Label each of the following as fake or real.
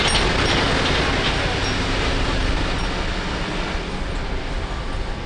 real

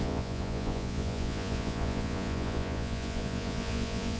fake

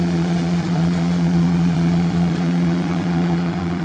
fake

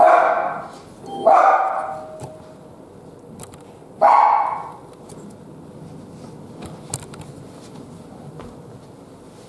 real